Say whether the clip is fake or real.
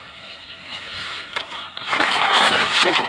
fake